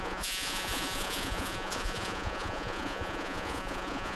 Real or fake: fake